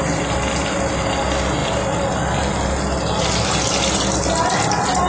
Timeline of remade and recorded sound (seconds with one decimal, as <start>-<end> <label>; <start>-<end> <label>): 0.0-5.1 recorded